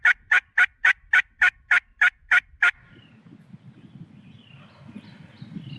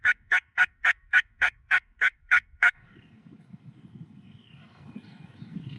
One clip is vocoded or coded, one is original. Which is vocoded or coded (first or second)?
second